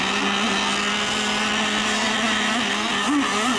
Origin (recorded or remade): recorded